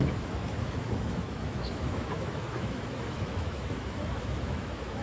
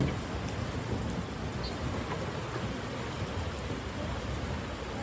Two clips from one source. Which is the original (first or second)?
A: second